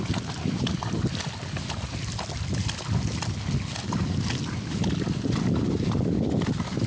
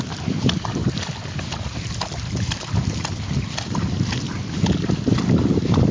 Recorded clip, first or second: first